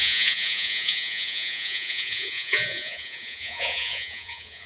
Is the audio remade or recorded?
remade